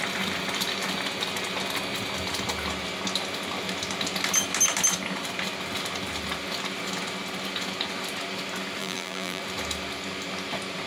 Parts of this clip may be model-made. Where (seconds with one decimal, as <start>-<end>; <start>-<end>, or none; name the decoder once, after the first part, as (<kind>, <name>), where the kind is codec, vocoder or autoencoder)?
8.8-9.4 (vocoder, BigVGAN v2)